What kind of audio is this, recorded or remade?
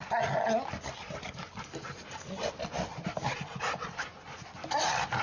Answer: recorded